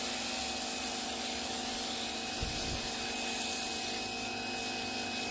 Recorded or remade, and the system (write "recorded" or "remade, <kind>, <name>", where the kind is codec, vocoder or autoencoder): recorded